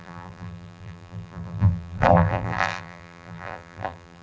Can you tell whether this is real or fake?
fake